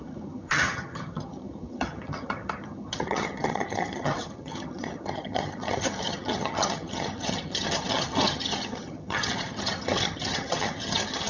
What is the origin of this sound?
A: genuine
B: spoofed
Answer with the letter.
B